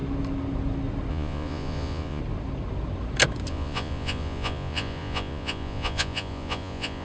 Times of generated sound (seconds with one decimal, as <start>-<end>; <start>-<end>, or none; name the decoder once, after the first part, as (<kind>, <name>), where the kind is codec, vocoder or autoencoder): 1.1-2.2 (vocoder, Vocos); 3.5-7.0